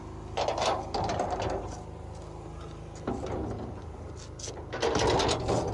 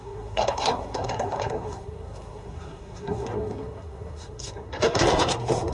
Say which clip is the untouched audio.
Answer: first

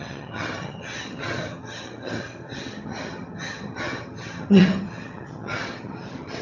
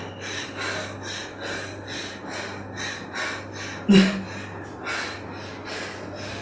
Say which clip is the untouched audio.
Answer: second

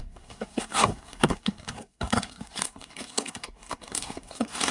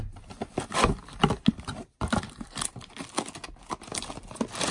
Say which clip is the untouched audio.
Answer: second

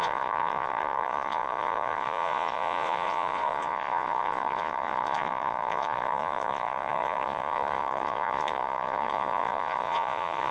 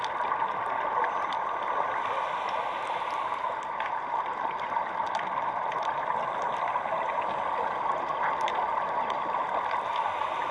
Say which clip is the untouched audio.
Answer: second